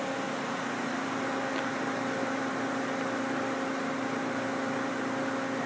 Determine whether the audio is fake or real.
real